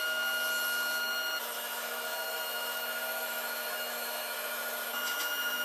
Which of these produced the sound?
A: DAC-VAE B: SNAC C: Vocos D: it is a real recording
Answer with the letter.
A